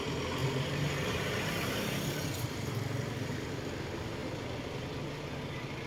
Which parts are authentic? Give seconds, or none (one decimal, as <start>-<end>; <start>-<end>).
0.0-0.4; 3.5-5.9